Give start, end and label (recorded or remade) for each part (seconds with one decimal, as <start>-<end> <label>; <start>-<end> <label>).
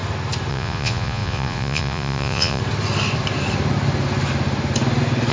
0.0-0.5 recorded; 0.5-2.6 remade; 2.6-5.3 recorded